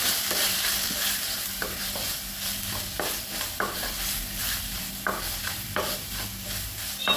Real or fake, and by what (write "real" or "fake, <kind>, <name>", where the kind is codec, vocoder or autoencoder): fake, vocoder, BigVGAN v2